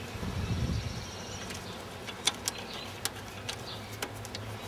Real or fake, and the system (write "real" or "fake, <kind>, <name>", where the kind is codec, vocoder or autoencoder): real